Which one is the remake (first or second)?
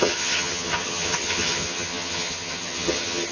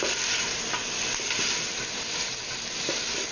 first